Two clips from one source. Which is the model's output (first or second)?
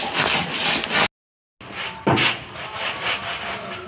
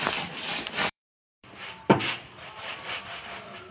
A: second